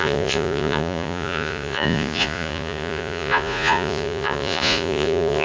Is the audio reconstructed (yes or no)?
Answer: yes